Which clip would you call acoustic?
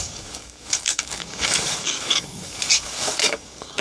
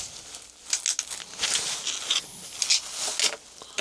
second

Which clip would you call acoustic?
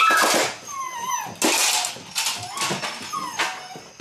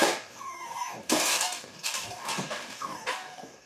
first